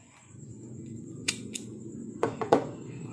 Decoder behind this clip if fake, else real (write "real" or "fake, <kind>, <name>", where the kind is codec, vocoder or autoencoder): fake, vocoder, Vocos